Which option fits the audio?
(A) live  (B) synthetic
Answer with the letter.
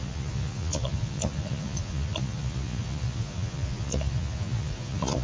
B